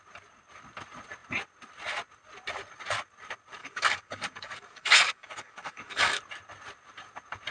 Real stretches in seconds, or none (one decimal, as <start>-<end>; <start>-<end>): 0.0-3.6; 6.2-7.5

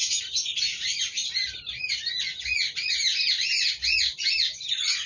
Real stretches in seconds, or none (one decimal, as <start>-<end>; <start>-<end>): 0.0-5.1